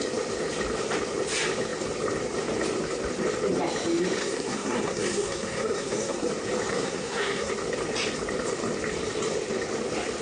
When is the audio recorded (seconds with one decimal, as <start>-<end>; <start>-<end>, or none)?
0.0-4.2; 6.3-6.7; 7.5-10.2

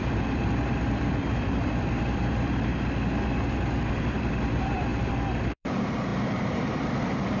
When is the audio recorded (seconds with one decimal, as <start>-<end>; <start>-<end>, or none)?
2.7-3.9; 4.9-5.4

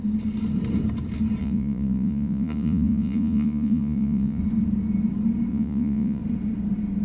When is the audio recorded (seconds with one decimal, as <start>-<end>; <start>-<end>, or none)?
0.0-1.4; 4.4-5.5; 6.2-7.0

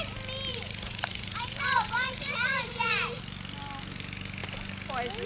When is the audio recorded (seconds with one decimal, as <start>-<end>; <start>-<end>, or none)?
0.0-0.5; 3.2-5.3

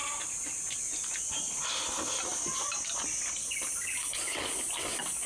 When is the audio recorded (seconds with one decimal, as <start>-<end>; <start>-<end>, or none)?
0.0-5.3

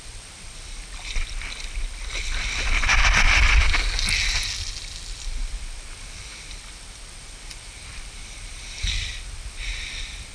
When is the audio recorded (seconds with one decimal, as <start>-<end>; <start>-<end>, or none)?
3.0-5.1

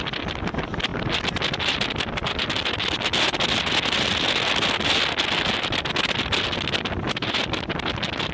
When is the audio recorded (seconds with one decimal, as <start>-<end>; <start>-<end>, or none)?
0.0-8.3